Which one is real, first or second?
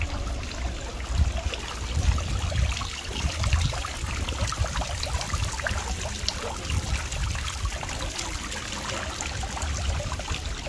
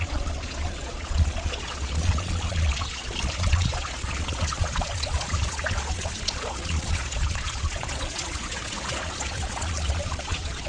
first